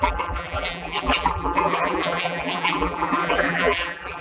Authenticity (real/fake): fake